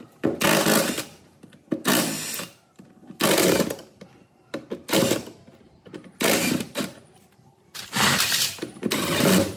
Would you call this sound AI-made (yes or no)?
yes